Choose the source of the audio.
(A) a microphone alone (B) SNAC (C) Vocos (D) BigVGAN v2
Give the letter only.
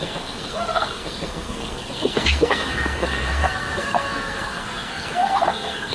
B